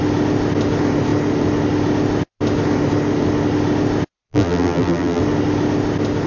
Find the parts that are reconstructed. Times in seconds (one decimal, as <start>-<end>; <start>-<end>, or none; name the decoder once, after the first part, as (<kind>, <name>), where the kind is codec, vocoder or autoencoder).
4.3-5.2 (vocoder, BigVGAN v2)